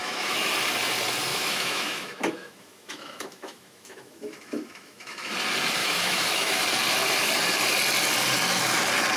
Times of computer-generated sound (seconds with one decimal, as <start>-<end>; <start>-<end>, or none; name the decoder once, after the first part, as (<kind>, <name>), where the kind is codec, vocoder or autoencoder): 0.0-0.5 (autoencoder, DAC-VAE); 1.3-5.3; 5.8-6.6